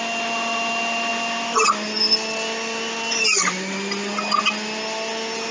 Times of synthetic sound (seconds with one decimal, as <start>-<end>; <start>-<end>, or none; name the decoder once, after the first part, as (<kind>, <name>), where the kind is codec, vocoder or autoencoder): none